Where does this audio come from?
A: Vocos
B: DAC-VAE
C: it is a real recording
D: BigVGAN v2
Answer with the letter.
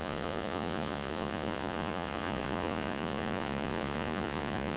A